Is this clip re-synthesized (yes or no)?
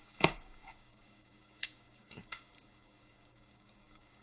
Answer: yes